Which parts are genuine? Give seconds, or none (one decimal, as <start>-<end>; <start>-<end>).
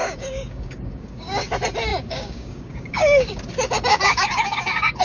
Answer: 1.5-1.9; 3.4-3.9